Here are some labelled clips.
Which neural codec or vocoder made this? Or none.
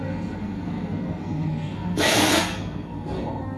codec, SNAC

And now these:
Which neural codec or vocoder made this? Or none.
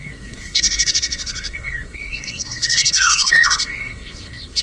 codec, SNAC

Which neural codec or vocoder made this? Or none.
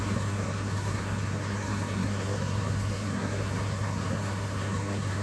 codec, SNAC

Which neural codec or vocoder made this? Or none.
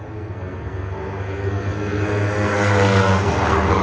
codec, SNAC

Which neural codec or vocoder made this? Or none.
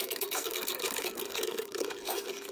codec, SNAC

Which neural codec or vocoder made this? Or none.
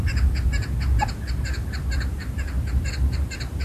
none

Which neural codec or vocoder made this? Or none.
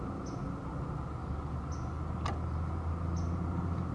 none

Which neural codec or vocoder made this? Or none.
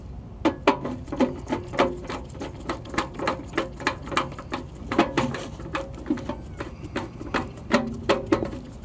none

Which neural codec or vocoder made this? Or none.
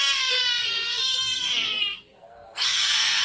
codec, SNAC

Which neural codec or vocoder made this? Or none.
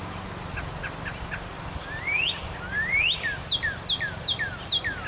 none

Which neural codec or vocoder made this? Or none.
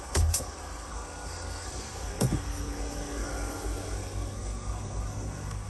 codec, SNAC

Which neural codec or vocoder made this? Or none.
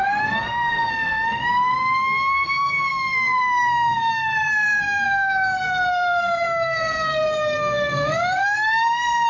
codec, SNAC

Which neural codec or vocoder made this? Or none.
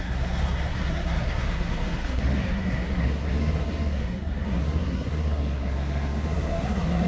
codec, SNAC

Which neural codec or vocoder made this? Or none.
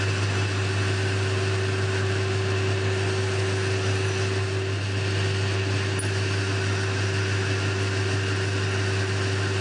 none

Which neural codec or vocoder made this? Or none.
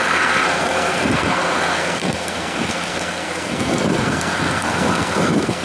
codec, SNAC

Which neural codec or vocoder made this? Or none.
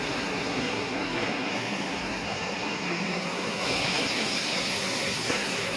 codec, SNAC